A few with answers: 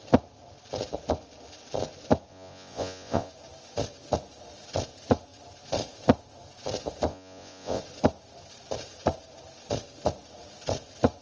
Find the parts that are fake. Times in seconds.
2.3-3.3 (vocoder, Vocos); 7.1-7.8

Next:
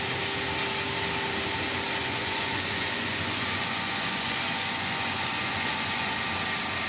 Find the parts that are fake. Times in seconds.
2.0-6.1 (vocoder, Vocos)

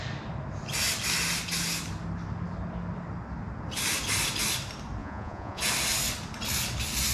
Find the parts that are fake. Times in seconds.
5.0-5.6 (vocoder, Vocos)

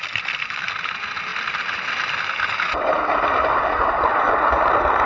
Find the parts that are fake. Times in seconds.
none

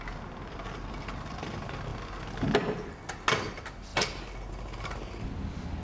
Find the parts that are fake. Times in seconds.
none

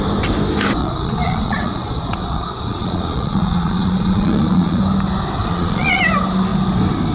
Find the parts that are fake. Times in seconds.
0.8-4.8 (vocoder, Vocos); 5.4-6.0

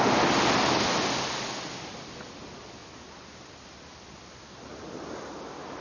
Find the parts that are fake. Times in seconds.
none